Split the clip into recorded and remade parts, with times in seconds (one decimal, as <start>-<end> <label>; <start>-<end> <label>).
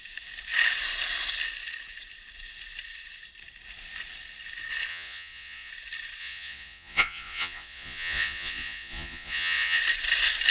0.0-4.9 recorded; 4.9-5.7 remade; 5.7-6.2 recorded; 6.2-9.8 remade; 9.8-10.5 recorded